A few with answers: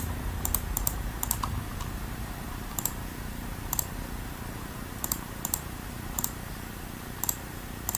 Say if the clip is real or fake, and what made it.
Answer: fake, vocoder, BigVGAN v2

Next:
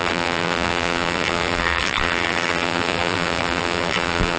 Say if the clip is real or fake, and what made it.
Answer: fake, vocoder, BigVGAN v2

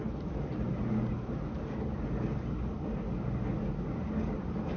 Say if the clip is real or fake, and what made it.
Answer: real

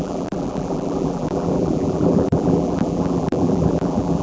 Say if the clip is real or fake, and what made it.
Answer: fake, vocoder, BigVGAN v2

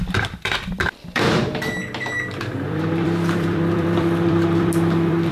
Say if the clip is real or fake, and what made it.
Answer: fake, vocoder, BigVGAN v2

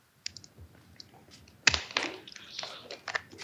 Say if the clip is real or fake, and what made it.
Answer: real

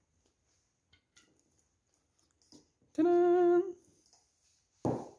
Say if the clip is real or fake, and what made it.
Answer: real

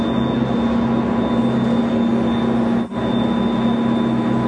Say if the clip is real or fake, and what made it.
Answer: real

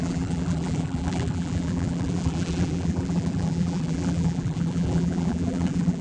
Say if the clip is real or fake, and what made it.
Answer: fake, vocoder, BigVGAN v2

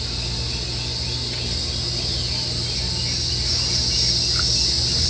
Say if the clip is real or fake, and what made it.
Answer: real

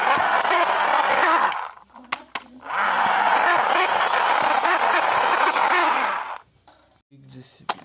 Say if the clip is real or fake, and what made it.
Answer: real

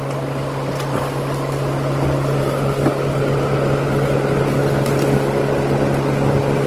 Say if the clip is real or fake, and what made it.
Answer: real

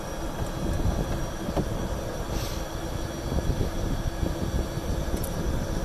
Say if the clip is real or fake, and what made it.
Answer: real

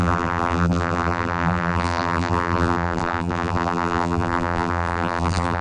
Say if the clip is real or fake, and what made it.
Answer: fake, vocoder, BigVGAN v2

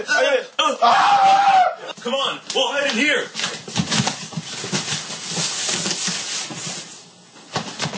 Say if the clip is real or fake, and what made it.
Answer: real